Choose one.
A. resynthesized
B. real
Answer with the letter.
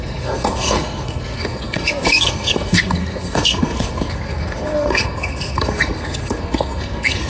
A